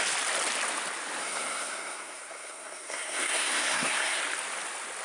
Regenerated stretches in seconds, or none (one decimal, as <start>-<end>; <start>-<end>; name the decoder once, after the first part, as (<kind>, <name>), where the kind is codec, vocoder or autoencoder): 1.2-4.2 (codec, SNAC)